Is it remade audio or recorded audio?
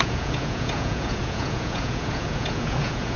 remade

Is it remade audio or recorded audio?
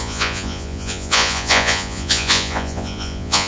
remade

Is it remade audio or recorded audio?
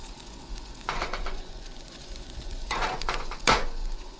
remade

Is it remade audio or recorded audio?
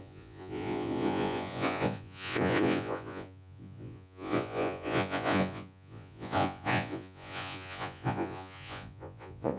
remade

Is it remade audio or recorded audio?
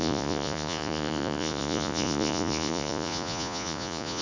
remade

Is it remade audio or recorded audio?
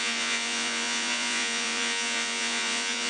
remade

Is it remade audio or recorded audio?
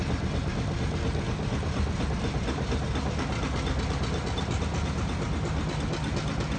recorded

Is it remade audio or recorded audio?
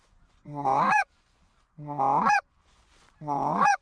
remade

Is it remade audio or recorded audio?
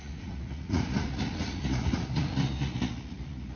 remade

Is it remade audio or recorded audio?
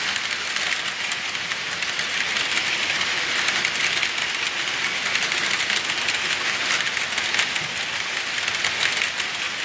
recorded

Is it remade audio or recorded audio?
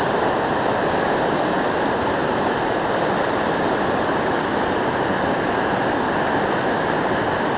recorded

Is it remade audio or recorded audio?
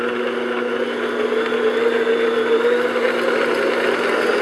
recorded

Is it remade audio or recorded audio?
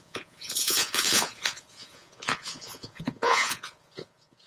remade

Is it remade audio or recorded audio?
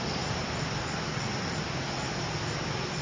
recorded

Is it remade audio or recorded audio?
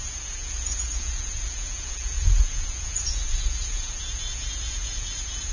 remade